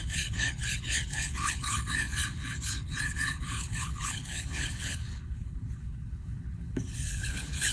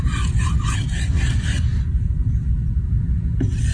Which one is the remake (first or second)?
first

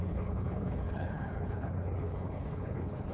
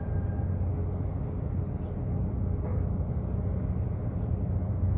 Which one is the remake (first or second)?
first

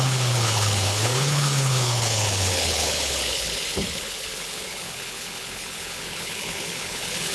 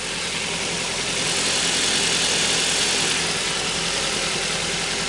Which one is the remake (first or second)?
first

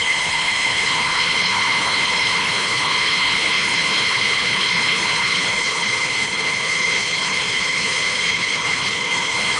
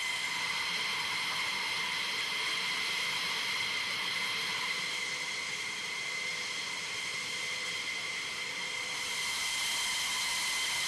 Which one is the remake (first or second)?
first